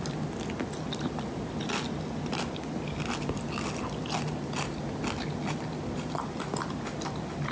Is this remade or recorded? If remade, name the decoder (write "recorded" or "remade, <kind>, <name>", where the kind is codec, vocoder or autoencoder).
recorded